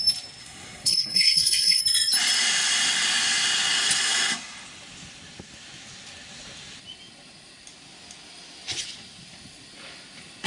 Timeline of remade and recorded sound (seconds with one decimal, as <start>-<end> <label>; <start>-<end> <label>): 0.0-0.4 recorded; 0.4-1.8 remade; 1.8-10.5 recorded